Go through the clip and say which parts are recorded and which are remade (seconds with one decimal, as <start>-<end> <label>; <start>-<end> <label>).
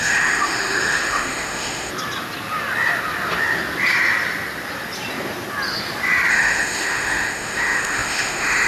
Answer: 0.0-1.9 remade; 1.9-6.3 recorded; 6.3-8.7 remade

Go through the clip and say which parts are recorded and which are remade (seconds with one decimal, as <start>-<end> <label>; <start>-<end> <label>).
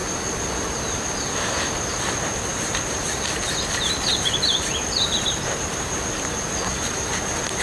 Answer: 0.0-7.6 recorded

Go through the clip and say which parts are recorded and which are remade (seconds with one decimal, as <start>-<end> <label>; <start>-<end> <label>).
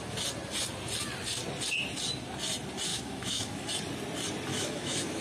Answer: 0.0-2.9 recorded; 2.9-3.7 remade; 3.7-4.5 recorded; 4.5-5.2 remade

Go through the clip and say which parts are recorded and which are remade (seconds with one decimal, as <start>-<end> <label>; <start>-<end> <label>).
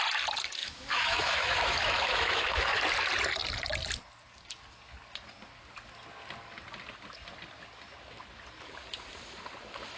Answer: 0.0-0.6 recorded; 0.6-2.8 remade; 2.8-10.0 recorded